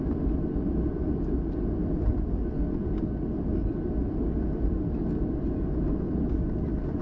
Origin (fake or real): real